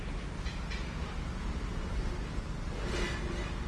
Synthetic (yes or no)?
no